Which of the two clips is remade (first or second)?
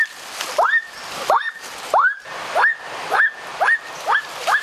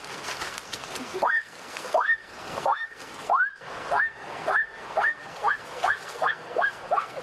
second